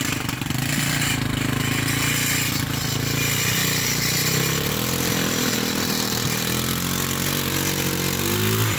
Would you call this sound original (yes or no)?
no